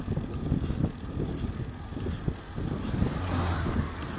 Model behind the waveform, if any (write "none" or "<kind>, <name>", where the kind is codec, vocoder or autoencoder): none